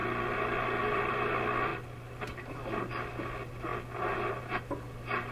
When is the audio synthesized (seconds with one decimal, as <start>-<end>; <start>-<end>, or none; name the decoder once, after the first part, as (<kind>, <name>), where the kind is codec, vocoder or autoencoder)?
none